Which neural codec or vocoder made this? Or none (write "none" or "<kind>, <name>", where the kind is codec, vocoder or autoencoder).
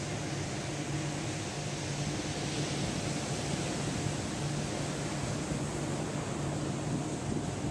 none